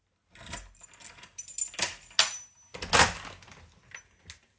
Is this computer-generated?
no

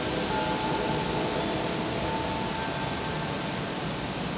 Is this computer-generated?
no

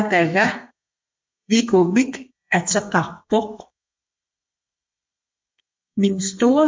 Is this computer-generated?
yes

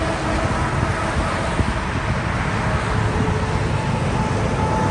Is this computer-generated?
no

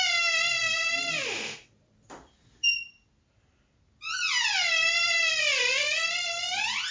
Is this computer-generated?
no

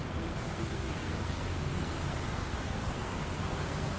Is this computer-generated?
yes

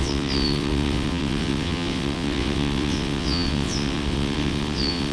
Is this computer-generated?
yes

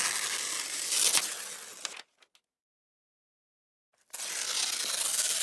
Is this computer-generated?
no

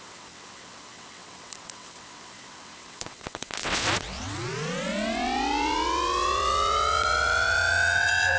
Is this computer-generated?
yes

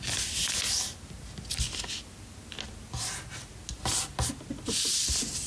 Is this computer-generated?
no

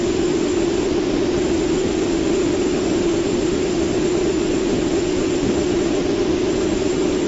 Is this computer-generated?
no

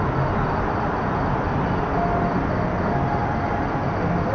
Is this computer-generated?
no